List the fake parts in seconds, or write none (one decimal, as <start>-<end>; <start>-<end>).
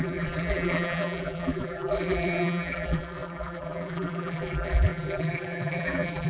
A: 0.0-6.3